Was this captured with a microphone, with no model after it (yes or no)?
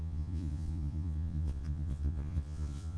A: no